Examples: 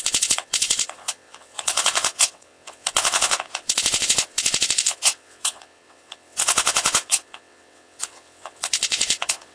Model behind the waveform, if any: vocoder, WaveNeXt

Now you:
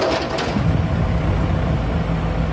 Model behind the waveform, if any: none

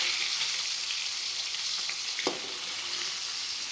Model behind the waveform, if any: none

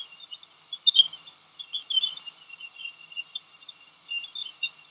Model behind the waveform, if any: none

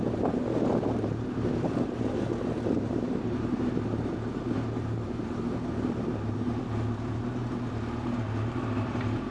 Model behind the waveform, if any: vocoder, BigVGAN v2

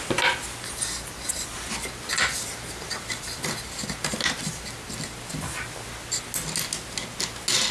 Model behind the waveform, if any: none